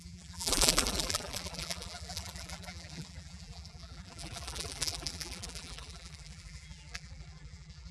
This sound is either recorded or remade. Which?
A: remade